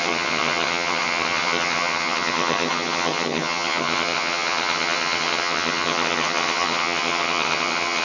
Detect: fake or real fake